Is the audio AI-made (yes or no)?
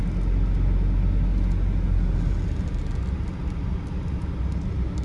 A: no